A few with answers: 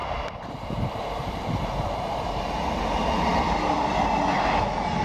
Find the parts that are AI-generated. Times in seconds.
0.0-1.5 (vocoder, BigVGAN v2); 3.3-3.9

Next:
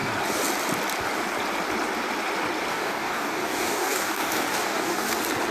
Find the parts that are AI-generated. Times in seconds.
2.7-5.1 (codec, DAC)